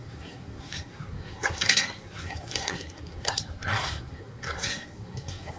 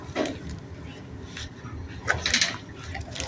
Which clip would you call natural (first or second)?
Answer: second